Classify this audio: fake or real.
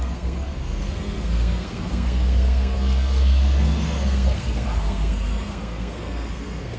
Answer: fake